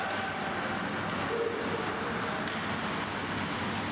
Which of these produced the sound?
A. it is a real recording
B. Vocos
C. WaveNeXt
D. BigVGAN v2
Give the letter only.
A